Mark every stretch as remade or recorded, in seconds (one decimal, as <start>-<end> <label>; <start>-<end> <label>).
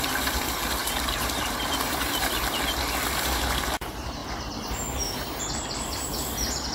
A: 0.0-0.8 recorded; 0.8-2.3 remade; 2.3-4.2 recorded; 4.2-5.4 remade; 5.4-6.7 recorded